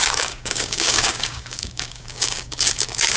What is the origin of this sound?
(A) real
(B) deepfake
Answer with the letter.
B